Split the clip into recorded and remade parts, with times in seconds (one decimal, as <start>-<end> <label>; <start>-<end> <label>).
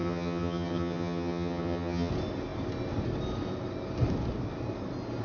0.0-2.1 remade; 2.1-5.2 recorded